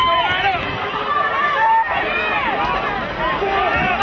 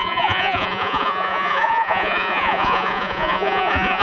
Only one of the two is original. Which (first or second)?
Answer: first